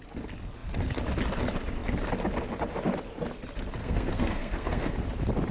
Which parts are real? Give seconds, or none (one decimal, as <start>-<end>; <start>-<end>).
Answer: 0.0-3.8; 4.9-5.5